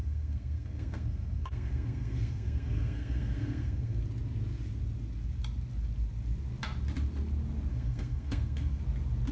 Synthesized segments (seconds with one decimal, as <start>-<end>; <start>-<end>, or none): 0.0-4.0; 7.7-8.8